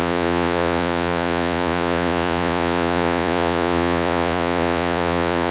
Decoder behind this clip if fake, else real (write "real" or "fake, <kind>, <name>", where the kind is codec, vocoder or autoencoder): fake, vocoder, Vocos